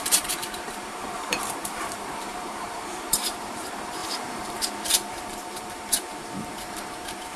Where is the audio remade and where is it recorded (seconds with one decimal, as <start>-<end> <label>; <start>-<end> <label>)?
0.0-7.4 remade